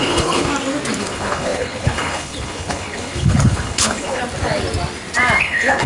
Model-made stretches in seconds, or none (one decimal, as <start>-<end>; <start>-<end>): 0.0-0.5; 1.0-4.2; 5.4-5.9